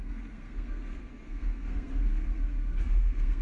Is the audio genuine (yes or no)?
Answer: no